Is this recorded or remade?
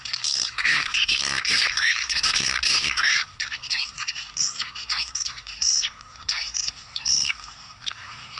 remade